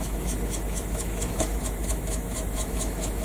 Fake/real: fake